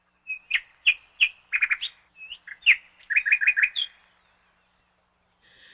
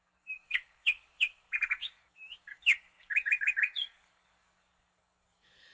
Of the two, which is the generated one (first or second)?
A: second